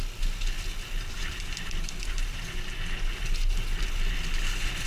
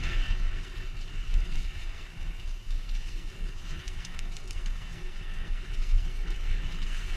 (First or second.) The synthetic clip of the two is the second